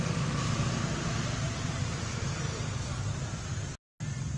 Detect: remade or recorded recorded